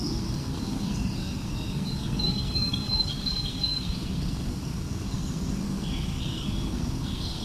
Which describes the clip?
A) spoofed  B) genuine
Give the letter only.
A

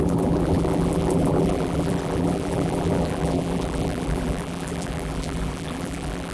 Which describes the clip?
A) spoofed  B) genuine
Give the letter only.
A